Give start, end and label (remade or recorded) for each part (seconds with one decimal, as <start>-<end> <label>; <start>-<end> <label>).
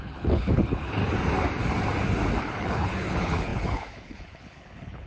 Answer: 0.0-1.0 remade; 1.0-2.4 recorded; 2.4-5.1 remade